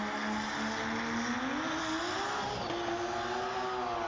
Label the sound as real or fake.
real